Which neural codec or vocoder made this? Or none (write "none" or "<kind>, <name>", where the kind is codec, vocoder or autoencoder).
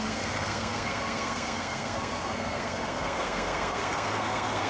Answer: codec, SNAC